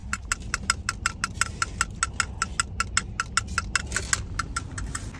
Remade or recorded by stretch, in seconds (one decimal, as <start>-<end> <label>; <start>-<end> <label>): 0.0-5.2 recorded